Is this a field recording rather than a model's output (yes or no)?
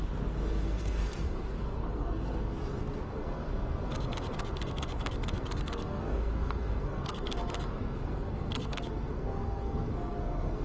no